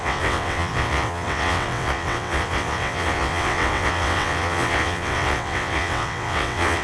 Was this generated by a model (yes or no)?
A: yes